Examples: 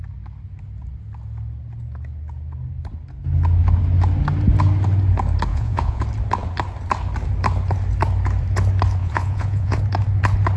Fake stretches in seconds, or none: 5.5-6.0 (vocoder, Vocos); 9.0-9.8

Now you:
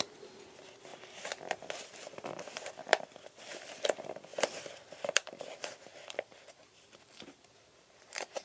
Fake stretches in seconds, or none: 0.0-4.3 (vocoder, BigVGAN v2); 4.9-8.4

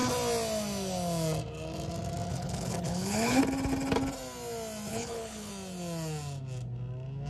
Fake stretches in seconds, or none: 2.3-3.4 (codec, HILCodec); 4.9-5.5

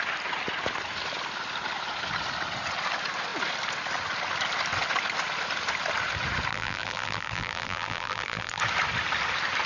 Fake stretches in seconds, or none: 6.5-8.6 (vocoder, BigVGAN v2)

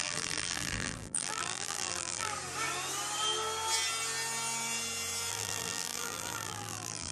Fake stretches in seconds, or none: 0.0-2.3 (vocoder, BigVGAN v2); 5.3-7.1

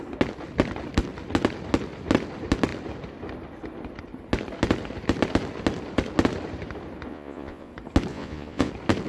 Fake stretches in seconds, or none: 7.1-7.7 (vocoder, Vocos); 8.1-8.7

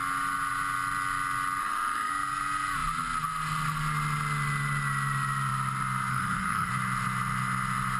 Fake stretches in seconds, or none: 1.6-2.1 (autoencoder, DAC-VAE); 6.1-6.7

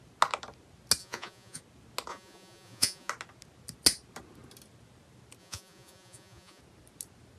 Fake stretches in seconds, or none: 1.0-1.6 (vocoder, Vocos); 2.1-3.1; 5.4-6.6